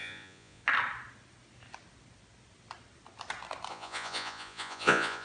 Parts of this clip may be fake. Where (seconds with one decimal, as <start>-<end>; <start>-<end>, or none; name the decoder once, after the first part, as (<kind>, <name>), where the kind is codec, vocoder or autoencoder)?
0.0-0.6 (vocoder, Vocos); 3.7-5.2